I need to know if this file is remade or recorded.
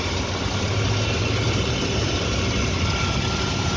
recorded